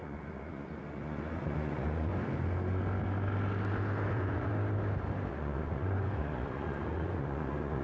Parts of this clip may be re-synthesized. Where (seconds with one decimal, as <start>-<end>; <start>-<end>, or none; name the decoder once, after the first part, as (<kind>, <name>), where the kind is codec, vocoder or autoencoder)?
0.0-2.1 (vocoder, Vocos); 4.1-4.5; 5.3-7.8